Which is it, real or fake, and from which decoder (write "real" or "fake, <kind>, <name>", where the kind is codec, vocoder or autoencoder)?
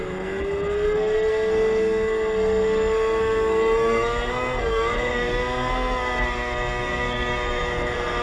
fake, codec, SNAC